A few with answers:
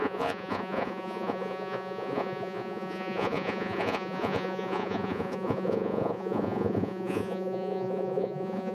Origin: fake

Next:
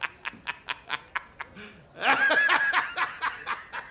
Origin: real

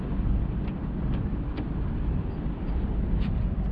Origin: fake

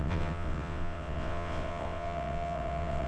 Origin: fake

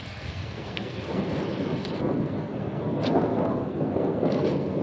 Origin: fake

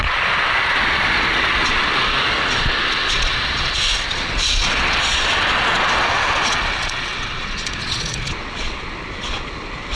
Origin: fake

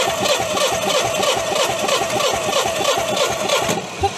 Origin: real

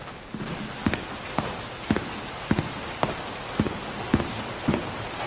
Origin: real